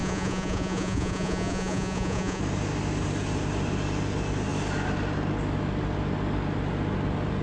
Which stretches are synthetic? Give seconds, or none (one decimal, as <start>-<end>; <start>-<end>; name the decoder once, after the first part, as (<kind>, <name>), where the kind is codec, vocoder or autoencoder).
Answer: 0.0-2.4 (vocoder, Vocos)